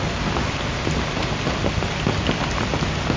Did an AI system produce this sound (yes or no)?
no